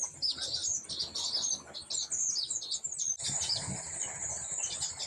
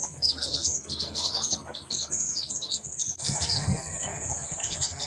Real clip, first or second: first